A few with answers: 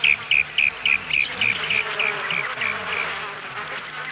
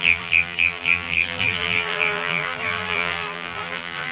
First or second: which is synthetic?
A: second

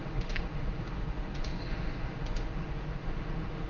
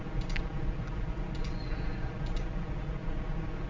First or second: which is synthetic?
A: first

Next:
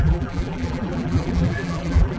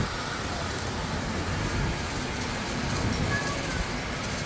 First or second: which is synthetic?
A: first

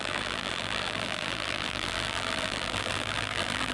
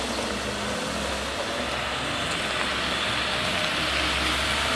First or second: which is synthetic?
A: first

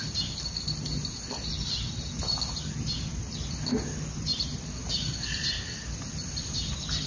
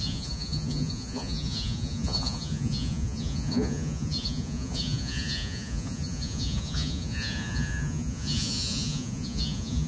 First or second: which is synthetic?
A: second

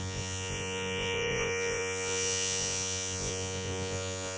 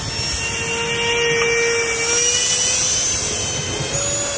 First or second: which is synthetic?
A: first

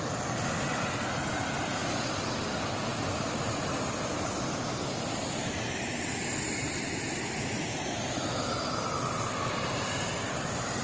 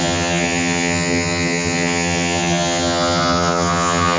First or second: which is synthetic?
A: second